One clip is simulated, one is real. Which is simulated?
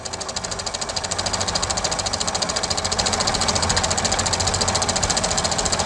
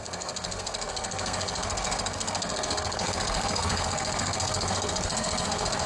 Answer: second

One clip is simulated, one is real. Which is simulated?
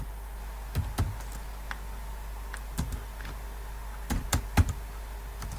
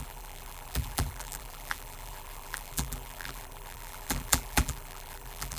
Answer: second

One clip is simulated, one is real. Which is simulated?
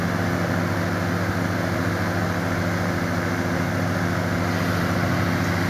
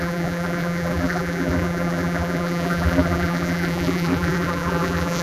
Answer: second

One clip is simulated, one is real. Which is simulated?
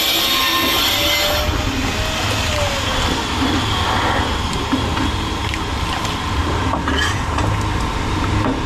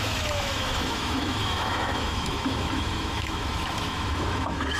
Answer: second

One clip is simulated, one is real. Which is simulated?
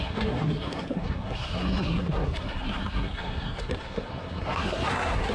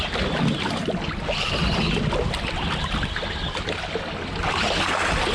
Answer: first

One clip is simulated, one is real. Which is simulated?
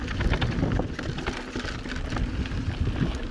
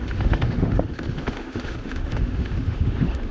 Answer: second